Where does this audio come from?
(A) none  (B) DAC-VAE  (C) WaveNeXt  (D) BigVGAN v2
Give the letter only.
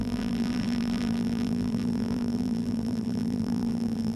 D